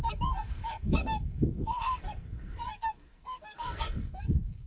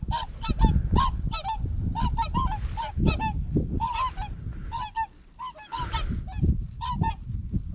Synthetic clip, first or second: first